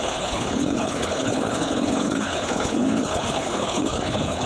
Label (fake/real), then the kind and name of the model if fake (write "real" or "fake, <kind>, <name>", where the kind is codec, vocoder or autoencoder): fake, codec, HILCodec